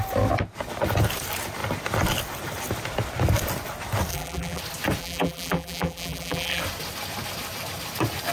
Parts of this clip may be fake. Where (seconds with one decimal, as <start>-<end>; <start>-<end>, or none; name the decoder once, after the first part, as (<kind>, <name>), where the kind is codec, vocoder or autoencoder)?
4.1-4.6 (vocoder, BigVGAN v2); 5.0-6.6